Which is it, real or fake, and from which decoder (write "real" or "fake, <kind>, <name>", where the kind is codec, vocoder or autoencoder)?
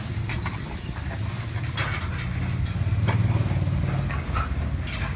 real